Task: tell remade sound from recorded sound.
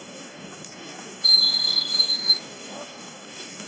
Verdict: remade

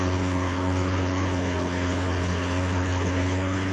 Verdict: remade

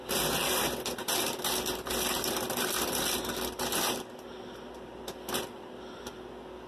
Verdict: recorded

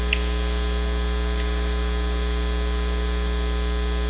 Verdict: recorded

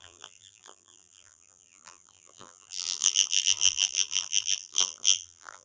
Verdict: remade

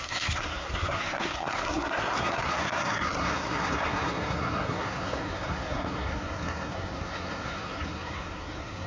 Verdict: remade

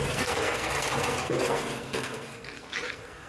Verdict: remade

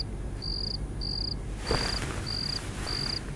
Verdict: recorded